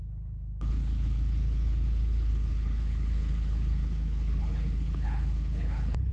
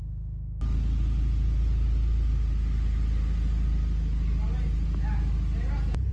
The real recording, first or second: second